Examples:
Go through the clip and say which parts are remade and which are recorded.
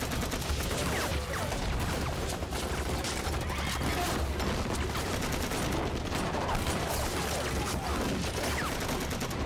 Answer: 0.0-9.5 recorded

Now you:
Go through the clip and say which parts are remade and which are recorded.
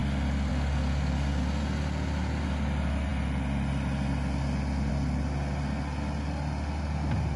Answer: 0.0-7.4 recorded